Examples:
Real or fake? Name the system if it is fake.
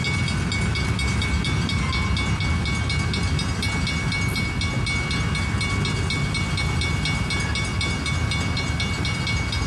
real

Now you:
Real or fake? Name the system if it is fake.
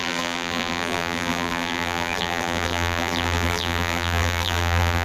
fake, vocoder, BigVGAN v2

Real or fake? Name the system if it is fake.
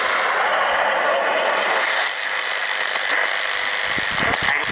real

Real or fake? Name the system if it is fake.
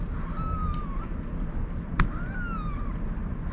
real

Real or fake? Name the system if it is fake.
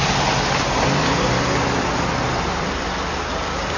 real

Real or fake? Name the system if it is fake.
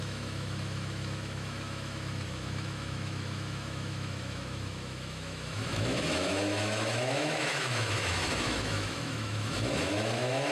fake, autoencoder, DAC-VAE